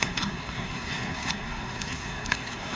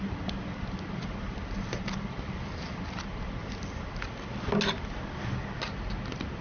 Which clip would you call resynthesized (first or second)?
first